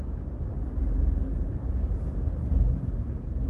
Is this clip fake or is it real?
real